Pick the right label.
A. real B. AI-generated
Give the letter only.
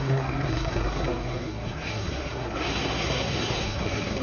B